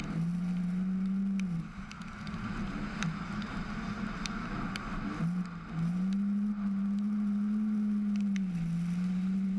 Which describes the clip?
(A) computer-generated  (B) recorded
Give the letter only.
B